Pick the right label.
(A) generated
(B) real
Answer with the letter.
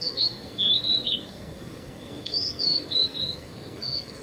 A